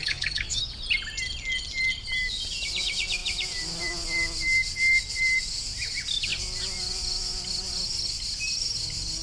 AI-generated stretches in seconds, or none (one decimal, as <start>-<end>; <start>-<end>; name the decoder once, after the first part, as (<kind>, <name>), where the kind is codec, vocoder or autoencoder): 0.0-0.6 (autoencoder, DAC-VAE)